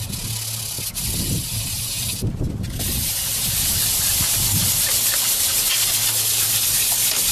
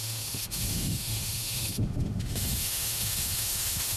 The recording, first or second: first